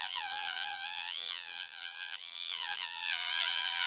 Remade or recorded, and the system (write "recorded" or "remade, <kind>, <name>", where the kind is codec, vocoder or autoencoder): remade, vocoder, BigVGAN v2